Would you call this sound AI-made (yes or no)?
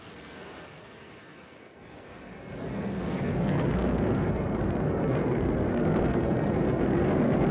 yes